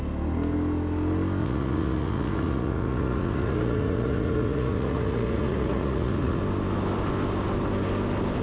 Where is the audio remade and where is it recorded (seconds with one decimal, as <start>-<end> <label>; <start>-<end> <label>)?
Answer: 0.0-1.4 recorded; 1.4-6.4 remade; 6.4-8.4 recorded